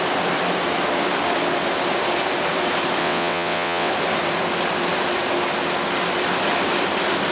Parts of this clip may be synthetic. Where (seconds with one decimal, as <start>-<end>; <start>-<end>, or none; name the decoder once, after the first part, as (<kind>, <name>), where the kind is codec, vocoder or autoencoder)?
3.0-3.9 (vocoder, WaveNeXt)